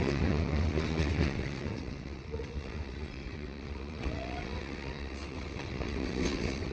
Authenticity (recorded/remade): remade